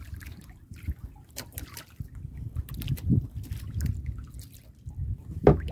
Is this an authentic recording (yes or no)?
no